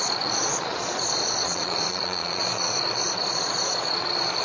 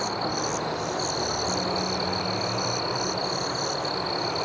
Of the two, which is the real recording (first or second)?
second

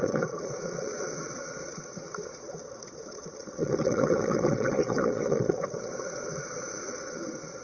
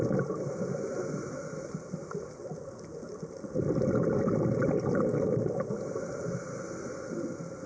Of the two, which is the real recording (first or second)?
second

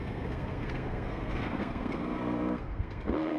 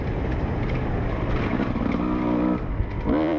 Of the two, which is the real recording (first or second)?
second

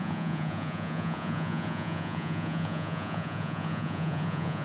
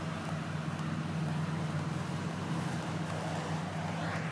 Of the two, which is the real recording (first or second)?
second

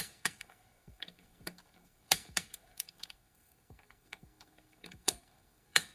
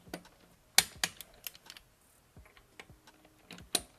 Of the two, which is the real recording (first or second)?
second